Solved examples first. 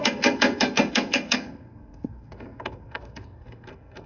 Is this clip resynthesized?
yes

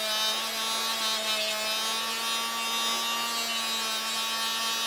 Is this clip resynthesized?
no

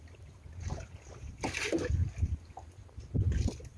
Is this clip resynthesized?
no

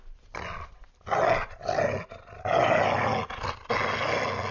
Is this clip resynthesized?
no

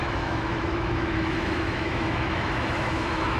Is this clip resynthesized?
yes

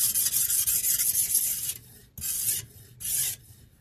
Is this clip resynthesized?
no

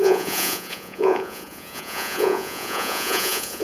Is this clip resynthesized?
yes